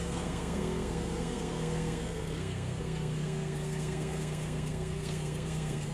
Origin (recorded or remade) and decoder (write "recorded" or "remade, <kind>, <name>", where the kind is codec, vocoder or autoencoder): remade, codec, SNAC